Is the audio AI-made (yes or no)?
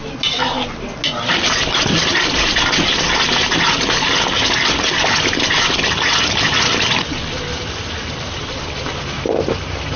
no